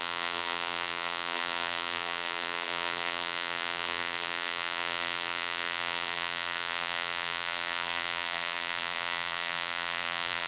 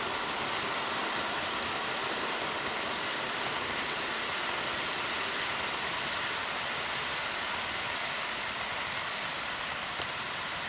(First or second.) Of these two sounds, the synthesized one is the first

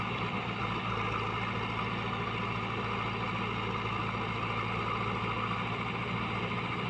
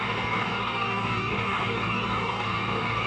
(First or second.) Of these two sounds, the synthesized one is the second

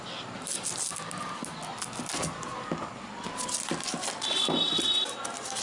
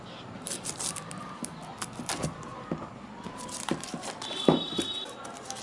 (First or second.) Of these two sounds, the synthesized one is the second